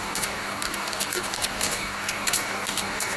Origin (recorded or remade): remade